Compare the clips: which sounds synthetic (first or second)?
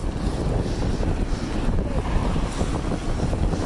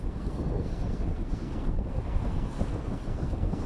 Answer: second